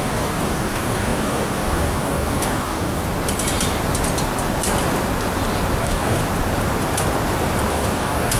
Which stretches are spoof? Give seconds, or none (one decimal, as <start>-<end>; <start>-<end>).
0.0-3.0; 5.8-6.2; 7.7-8.4